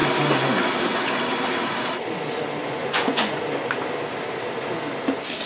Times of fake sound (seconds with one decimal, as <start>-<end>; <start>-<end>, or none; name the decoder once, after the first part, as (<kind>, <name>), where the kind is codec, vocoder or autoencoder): 2.6-3.4 (vocoder, Vocos)